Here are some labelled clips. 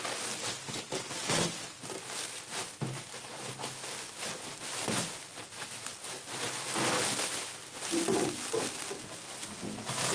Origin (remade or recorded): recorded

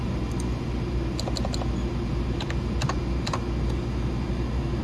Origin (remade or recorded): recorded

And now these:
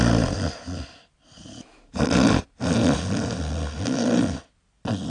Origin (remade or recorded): recorded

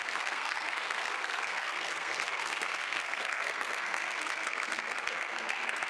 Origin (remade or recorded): remade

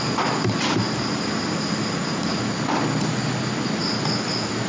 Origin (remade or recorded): recorded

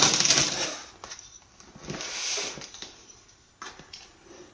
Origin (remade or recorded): recorded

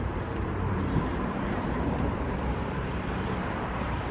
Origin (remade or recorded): remade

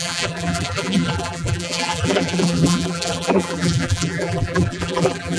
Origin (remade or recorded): remade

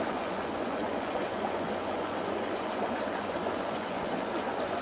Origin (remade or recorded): remade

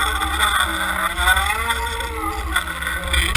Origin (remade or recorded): recorded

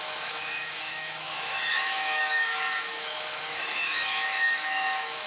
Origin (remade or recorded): remade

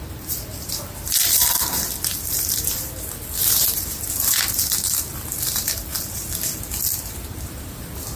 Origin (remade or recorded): remade